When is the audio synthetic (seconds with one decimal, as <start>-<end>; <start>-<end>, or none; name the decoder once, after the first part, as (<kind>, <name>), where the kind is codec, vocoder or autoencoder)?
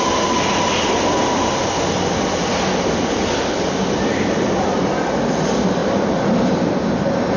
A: none